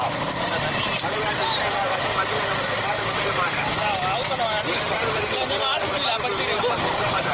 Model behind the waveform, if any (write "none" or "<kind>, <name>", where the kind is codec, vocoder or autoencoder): none